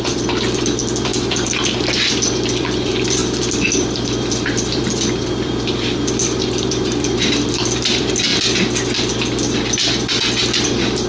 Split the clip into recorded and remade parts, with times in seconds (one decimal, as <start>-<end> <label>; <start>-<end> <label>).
0.0-8.3 remade; 8.3-10.6 recorded; 10.6-11.1 remade